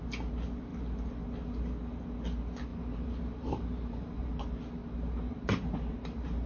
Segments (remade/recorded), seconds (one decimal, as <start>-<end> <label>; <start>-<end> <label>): 0.0-2.7 recorded; 2.7-4.3 remade; 4.3-4.8 recorded; 4.8-6.5 remade